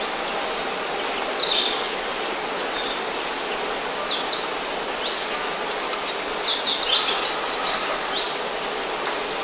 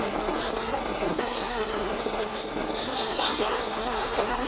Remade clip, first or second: second